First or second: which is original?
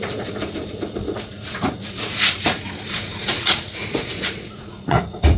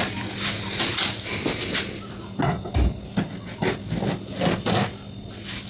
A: second